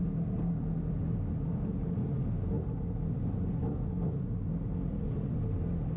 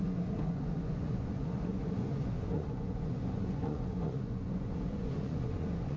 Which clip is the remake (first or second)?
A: second